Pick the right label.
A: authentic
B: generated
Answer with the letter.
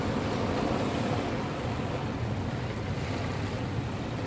A